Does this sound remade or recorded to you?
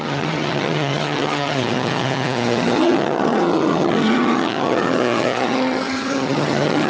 remade